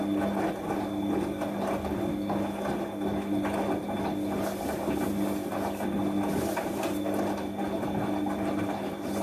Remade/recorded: recorded